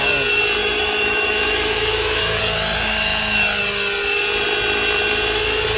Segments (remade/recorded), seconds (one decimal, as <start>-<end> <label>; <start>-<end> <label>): 0.0-0.6 recorded; 0.6-2.4 remade; 2.4-5.8 recorded